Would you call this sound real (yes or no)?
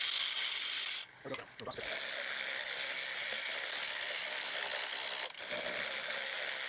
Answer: yes